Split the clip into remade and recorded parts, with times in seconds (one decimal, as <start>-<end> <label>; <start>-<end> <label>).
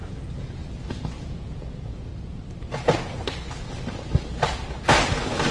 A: 0.0-0.6 remade; 0.6-1.2 recorded; 1.2-2.1 remade; 2.1-5.5 recorded